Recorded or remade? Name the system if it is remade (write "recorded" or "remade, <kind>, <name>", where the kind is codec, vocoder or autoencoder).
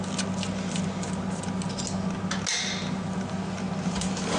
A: recorded